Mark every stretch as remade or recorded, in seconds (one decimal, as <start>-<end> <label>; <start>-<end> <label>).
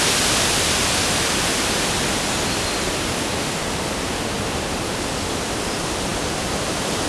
0.0-7.1 recorded